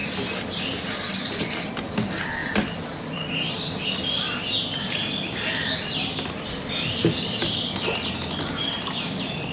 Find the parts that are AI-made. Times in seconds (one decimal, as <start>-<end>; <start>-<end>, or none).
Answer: none